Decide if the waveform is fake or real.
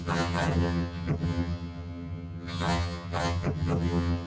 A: fake